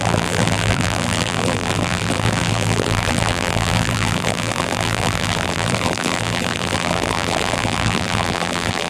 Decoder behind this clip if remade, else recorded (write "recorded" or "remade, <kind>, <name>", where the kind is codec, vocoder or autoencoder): remade, vocoder, BigVGAN v2